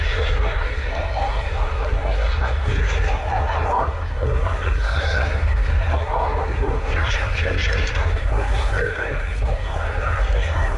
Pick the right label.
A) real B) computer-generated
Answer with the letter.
B